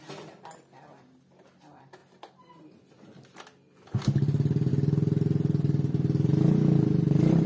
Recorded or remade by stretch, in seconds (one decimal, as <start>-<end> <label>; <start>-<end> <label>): 0.0-7.5 recorded